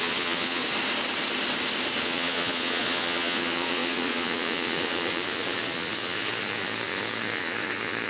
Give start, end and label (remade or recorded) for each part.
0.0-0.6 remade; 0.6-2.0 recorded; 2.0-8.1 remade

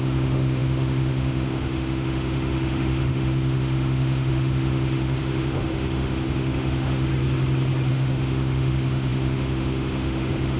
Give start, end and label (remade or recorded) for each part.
0.0-7.1 remade; 7.1-7.9 recorded; 7.9-10.6 remade

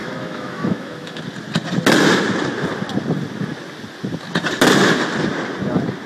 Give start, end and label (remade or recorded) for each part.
0.0-1.2 remade; 1.2-6.1 recorded